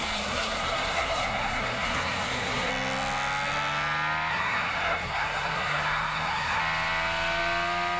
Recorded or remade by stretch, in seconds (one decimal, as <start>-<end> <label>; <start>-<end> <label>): 0.0-2.7 remade; 2.7-4.3 recorded; 4.3-6.6 remade; 6.6-8.0 recorded